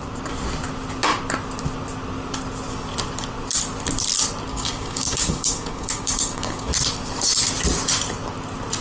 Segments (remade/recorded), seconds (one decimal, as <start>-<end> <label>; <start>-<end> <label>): 0.0-4.5 recorded; 4.5-6.7 remade; 6.7-8.8 recorded